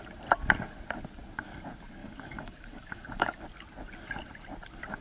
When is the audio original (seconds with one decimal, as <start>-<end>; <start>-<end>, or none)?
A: 0.0-2.0; 3.4-5.0